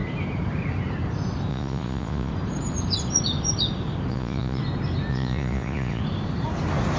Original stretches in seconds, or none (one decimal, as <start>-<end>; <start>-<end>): 0.0-1.5; 2.3-4.1; 4.6-5.1; 6.0-7.0